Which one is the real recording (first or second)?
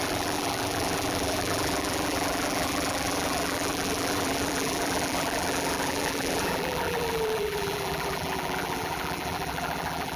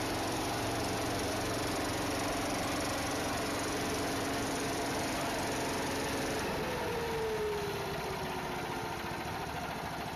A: second